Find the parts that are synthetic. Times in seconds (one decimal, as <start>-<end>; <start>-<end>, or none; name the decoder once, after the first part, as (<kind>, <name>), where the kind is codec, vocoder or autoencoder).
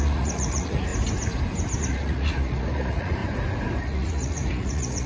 0.0-0.9 (vocoder, Vocos); 1.8-3.2; 3.8-5.1